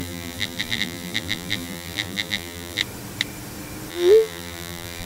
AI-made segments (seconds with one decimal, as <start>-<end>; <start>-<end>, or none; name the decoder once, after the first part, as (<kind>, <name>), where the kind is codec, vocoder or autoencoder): 0.0-2.8 (vocoder, BigVGAN v2); 3.9-5.1